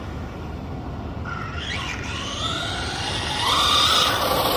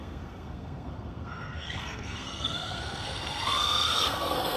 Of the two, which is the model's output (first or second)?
second